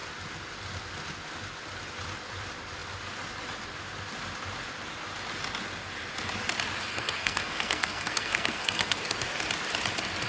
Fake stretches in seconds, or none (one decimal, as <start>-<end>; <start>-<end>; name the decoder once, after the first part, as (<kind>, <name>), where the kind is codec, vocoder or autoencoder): 6.9-9.0 (codec, SNAC)